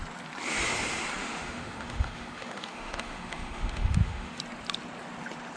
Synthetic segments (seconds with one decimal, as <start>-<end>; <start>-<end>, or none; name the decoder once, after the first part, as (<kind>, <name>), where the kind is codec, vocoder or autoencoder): 1.2-4.4 (autoencoder, DAC-VAE)